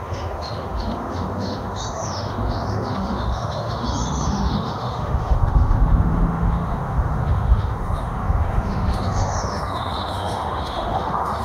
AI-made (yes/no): yes